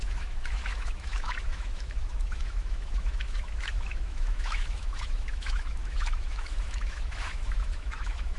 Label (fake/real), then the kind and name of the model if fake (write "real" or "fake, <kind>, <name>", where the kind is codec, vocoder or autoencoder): fake, autoencoder, DAC-VAE